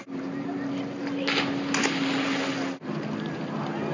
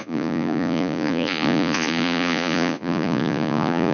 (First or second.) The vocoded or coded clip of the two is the second